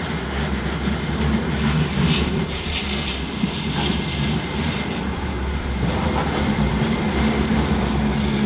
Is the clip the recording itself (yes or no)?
yes